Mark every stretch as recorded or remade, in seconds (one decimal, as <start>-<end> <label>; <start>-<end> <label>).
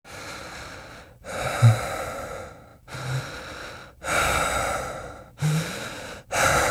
0.0-6.7 recorded